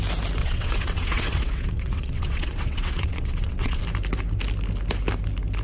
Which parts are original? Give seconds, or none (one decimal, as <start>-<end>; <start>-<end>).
0.0-0.4; 3.8-5.6